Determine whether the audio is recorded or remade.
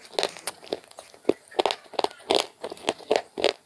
recorded